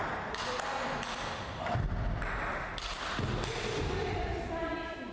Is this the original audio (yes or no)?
yes